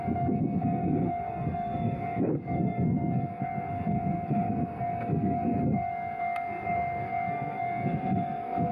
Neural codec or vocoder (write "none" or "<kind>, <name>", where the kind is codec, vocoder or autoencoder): codec, SNAC